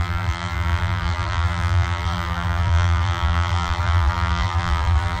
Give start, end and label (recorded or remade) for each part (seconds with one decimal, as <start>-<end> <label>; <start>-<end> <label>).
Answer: 0.0-5.2 remade